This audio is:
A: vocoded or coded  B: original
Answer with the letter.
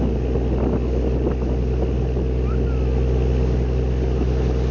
B